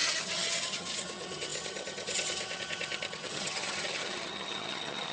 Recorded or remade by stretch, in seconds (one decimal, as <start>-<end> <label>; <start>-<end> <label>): 0.0-5.1 remade